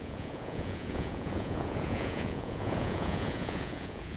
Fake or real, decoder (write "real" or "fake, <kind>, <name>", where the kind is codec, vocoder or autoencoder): fake, vocoder, Vocos